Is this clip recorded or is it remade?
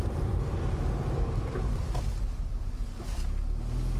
recorded